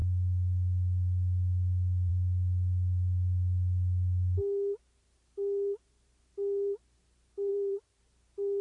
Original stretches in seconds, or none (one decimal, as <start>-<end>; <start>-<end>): 0.0-7.5; 8.0-8.6

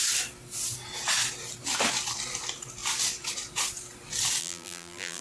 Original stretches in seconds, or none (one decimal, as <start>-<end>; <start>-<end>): 0.0-4.4

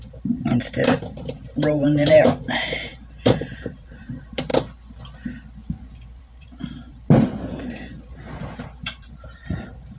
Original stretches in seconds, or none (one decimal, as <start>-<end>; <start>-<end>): 4.5-6.2

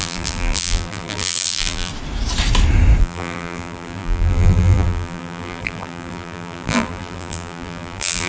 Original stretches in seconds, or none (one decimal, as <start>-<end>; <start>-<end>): 1.9-3.0

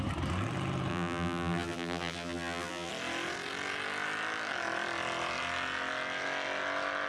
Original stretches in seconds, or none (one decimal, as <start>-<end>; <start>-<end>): 0.0-0.9; 2.9-7.1

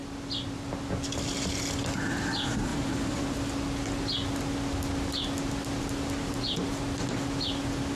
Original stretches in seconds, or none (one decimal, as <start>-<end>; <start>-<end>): 0.0-2.7; 3.2-8.0

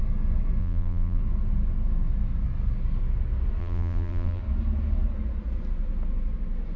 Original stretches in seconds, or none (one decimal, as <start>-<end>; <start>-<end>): 0.0-0.6; 1.2-3.6; 4.4-6.8